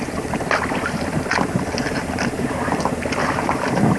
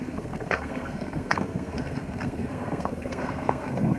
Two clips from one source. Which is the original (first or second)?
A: first